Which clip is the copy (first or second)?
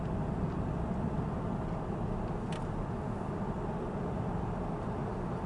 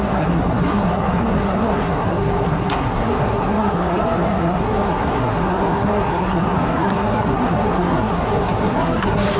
second